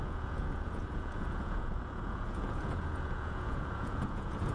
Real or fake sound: fake